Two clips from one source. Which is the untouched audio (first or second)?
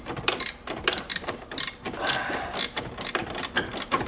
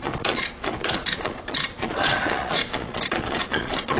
first